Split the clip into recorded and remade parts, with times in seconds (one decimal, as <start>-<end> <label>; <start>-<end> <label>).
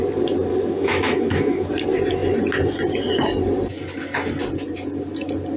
0.0-0.5 recorded; 0.5-1.7 remade; 1.7-5.6 recorded